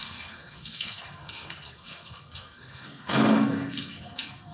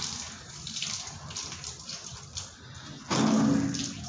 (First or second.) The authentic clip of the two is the second